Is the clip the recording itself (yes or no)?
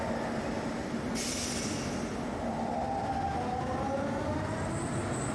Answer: yes